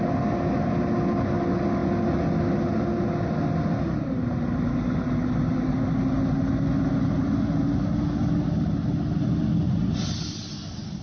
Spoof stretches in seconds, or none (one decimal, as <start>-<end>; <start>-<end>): none